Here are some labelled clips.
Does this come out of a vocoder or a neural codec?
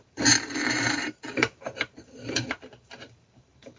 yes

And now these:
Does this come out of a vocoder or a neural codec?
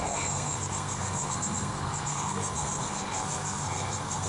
yes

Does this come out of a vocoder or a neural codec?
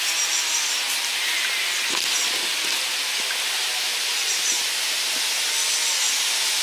no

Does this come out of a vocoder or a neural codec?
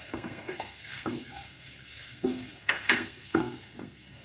yes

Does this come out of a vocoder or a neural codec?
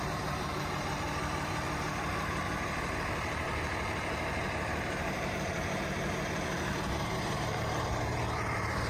yes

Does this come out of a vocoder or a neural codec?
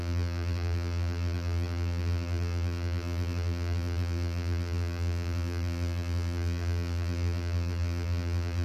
yes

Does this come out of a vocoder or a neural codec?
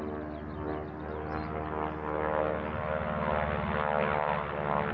no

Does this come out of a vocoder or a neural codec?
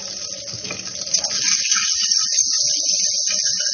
no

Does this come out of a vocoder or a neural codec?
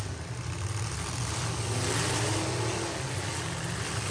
no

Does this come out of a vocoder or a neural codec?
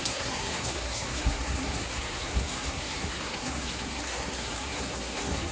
yes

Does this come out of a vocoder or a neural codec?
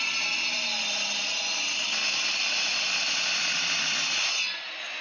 no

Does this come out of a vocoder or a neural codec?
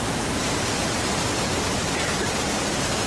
no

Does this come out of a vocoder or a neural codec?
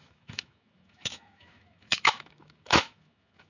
yes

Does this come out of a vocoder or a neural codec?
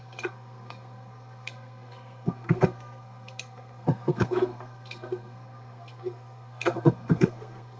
yes